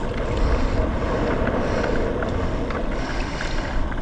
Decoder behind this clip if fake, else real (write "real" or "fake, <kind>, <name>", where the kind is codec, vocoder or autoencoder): real